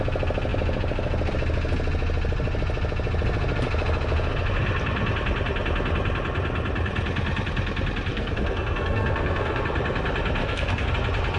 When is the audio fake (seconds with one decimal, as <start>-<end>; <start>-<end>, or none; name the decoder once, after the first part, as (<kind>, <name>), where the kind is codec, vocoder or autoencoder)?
8.1-9.6 (codec, SNAC); 10.4-10.9